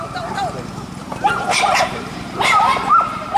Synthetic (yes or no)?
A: yes